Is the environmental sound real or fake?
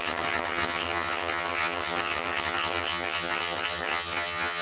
fake